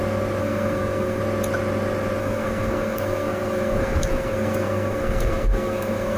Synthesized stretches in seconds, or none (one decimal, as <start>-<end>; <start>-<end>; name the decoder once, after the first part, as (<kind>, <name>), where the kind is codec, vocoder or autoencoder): 0.4-1.2 (codec, SNAC); 2.2-6.2